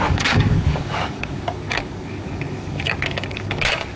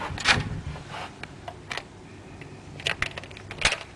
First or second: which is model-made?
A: first